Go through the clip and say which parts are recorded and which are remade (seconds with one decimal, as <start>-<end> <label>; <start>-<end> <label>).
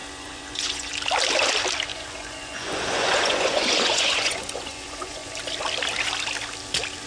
0.0-0.9 remade; 0.9-1.9 recorded; 1.9-5.3 remade; 5.3-7.1 recorded